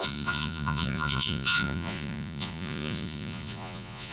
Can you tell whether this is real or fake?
fake